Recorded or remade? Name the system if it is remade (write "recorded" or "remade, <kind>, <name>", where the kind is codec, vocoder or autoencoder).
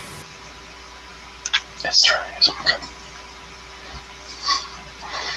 recorded